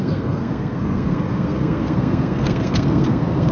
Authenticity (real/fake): fake